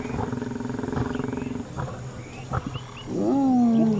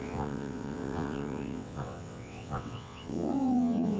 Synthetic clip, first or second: second